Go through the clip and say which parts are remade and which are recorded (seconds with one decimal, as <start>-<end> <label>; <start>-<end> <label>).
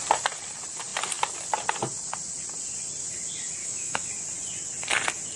0.0-3.6 recorded; 3.6-4.1 remade; 4.1-5.4 recorded